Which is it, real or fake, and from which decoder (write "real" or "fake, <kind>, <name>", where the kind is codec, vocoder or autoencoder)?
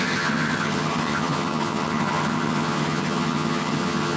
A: fake, vocoder, HiFi-GAN